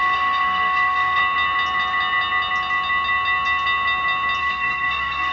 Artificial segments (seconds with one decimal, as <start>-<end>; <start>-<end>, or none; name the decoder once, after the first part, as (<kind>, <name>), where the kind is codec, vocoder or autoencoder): 0.0-1.2 (codec, SNAC); 4.4-5.3